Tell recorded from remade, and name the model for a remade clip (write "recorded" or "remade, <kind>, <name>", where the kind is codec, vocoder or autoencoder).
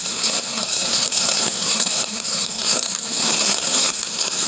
remade, codec, SNAC